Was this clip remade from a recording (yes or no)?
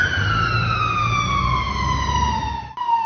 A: no